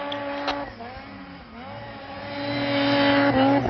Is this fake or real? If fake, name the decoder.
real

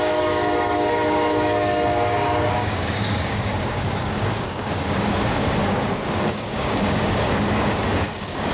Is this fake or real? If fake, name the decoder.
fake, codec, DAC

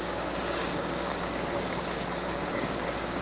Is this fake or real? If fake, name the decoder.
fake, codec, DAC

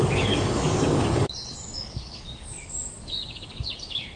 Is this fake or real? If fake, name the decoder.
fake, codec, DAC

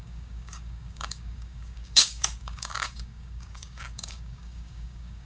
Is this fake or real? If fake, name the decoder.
fake, codec, DAC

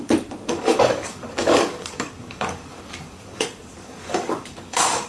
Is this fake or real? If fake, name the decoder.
fake, codec, DAC